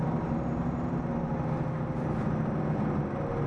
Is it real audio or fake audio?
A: real